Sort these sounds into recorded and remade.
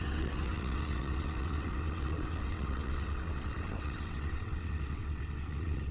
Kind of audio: remade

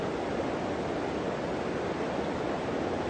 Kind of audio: recorded